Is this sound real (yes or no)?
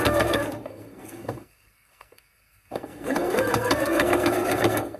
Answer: no